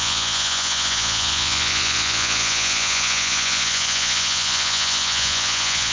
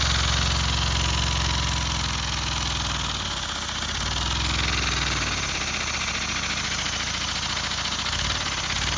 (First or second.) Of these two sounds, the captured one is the second